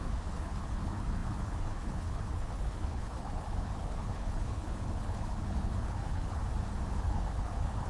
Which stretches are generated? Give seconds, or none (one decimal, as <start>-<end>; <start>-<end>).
0.0-6.4; 6.9-7.9